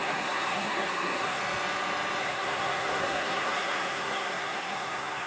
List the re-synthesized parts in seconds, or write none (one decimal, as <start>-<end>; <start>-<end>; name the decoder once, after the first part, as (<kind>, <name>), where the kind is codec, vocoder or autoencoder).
0.0-1.4 (codec, SNAC); 2.2-5.3